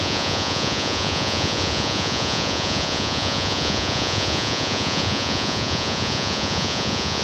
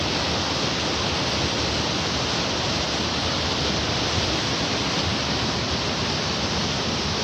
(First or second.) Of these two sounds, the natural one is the second